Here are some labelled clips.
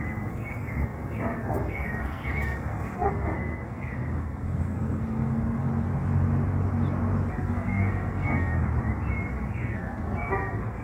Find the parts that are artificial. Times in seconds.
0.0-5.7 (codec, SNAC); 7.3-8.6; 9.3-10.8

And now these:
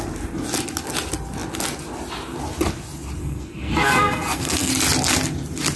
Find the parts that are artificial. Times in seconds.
3.2-4.7 (codec, SNAC)